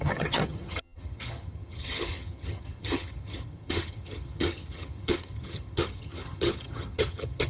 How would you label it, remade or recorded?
remade